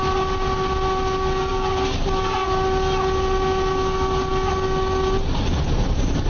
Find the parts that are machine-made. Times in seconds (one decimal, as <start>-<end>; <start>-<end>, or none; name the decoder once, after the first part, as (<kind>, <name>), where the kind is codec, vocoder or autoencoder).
none